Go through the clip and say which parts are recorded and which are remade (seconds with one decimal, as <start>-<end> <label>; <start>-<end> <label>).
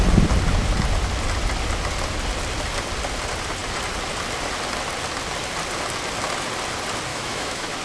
0.0-7.1 recorded; 7.1-7.8 remade